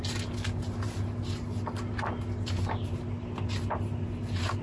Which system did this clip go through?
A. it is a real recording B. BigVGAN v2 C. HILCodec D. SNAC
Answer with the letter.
A